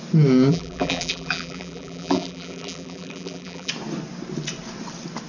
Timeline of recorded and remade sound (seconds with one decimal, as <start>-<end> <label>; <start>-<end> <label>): 0.0-0.5 recorded; 0.5-3.7 remade; 3.7-5.3 recorded